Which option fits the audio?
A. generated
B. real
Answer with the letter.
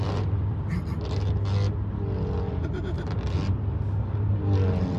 B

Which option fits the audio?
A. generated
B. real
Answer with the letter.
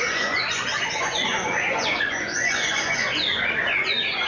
A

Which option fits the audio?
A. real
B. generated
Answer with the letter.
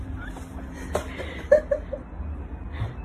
A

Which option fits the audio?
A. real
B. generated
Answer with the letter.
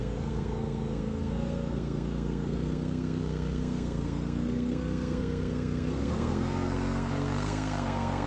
B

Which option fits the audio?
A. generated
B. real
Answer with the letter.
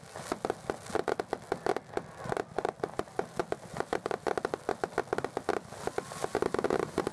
B